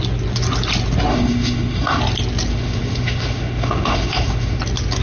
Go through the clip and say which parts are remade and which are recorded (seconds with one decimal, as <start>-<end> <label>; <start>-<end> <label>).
0.0-1.1 recorded; 1.1-2.0 remade; 2.0-2.5 recorded; 2.5-4.6 remade; 4.6-5.0 recorded